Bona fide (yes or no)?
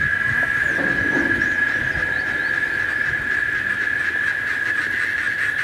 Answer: yes